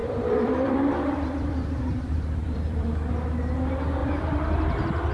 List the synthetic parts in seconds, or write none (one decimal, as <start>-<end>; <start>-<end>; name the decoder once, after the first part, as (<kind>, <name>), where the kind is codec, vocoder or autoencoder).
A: 0.0-3.1 (vocoder, BigVGAN v2); 4.0-5.1